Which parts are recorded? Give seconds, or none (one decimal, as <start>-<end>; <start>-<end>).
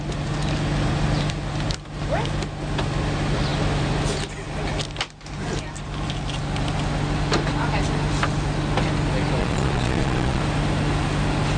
0.0-9.4; 10.4-11.6